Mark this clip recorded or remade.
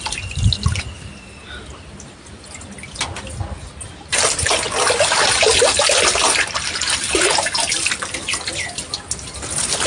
recorded